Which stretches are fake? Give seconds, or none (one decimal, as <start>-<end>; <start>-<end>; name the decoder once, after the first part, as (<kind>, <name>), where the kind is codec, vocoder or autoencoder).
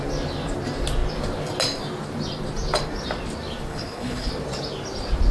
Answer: 3.7-4.3 (codec, HILCodec)